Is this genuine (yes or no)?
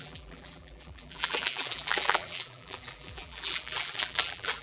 no